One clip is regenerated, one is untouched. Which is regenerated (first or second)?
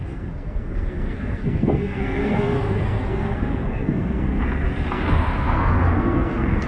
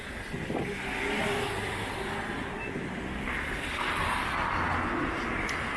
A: first